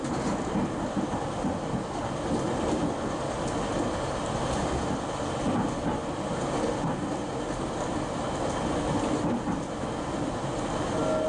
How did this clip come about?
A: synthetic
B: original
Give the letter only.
B